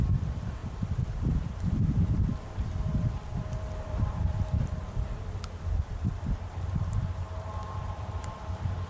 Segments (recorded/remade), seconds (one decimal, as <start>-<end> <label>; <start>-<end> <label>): 0.0-0.6 recorded; 0.6-5.4 remade; 5.4-7.6 recorded; 7.6-8.3 remade; 8.3-8.9 recorded

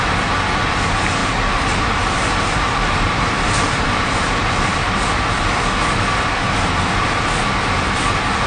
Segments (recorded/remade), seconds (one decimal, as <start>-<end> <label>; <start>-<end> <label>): 0.0-1.2 recorded; 1.2-4.8 remade; 4.8-8.5 recorded

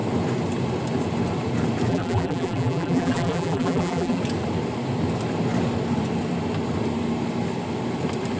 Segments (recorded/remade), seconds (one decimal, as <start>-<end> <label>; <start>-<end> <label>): 0.0-1.9 recorded; 1.9-4.2 remade; 4.2-8.4 recorded

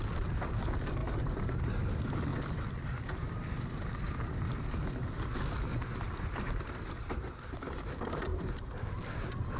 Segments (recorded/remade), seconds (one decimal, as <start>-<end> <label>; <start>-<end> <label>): 0.0-1.0 recorded; 1.0-1.7 remade; 1.7-5.7 recorded; 5.7-7.8 remade; 7.8-8.3 recorded; 8.3-9.6 remade

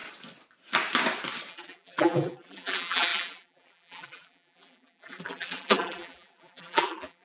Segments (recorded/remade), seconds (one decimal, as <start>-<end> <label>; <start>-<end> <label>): 0.0-1.5 recorded; 1.5-7.2 remade

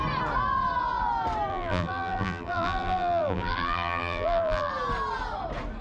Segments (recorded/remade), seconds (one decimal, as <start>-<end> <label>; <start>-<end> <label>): 0.0-1.5 recorded; 1.5-4.7 remade; 4.7-5.8 recorded

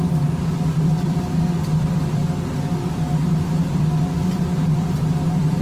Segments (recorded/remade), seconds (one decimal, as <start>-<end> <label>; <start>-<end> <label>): 0.0-2.2 remade; 2.2-3.7 recorded; 3.7-5.6 remade

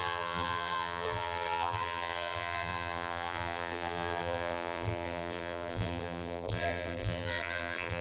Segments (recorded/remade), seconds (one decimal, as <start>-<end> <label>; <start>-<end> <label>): 0.0-8.0 remade